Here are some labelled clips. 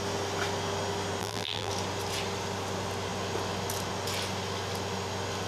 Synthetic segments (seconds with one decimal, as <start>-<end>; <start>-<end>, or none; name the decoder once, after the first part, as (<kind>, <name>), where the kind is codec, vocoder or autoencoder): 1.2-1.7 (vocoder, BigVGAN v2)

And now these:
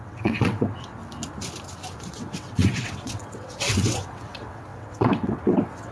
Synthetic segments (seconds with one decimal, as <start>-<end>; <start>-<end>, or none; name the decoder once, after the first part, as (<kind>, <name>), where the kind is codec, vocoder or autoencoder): 0.0-1.0 (vocoder, WaveNeXt); 2.1-5.9

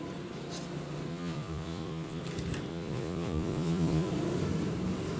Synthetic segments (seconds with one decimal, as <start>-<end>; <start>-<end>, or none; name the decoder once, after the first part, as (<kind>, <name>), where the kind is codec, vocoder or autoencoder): 1.1-2.2 (vocoder, Vocos); 2.7-4.1

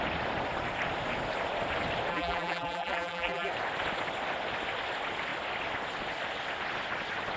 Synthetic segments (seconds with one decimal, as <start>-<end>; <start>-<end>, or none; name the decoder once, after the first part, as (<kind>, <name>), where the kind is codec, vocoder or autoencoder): 2.1-3.5 (vocoder, BigVGAN v2)

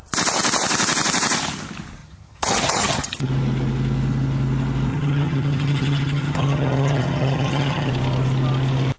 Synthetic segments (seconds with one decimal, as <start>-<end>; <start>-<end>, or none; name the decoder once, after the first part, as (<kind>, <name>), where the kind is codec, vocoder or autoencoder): 2.0-3.3 (vocoder, HiFi-GAN); 4.9-7.9

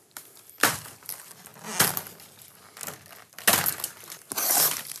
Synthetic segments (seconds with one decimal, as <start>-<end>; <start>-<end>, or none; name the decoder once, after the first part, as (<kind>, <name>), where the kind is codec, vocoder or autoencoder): 0.0-1.5 (vocoder, BigVGAN v2); 4.5-5.0